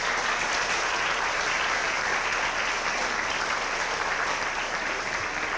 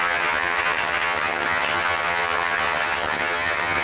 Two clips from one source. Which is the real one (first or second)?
first